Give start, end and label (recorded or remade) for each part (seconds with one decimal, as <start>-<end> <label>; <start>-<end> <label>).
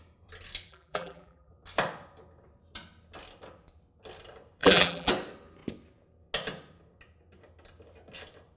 0.0-0.7 recorded; 0.7-1.5 remade; 1.5-4.6 recorded; 4.6-5.1 remade; 5.1-8.6 recorded